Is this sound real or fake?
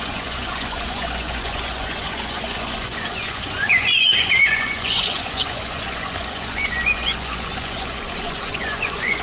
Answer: fake